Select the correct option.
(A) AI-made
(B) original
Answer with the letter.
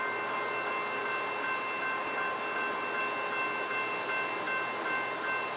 B